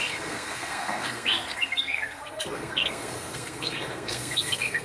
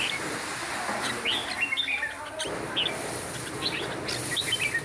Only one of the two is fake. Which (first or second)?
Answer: first